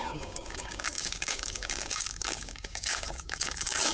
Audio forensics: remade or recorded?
remade